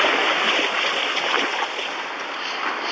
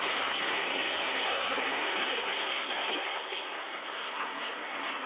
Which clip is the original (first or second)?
first